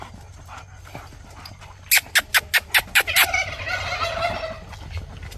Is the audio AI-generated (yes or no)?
no